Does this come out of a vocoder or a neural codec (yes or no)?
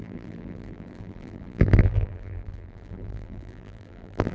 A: yes